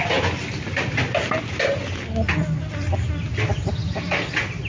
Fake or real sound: real